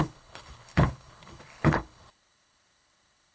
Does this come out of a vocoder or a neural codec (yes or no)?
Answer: yes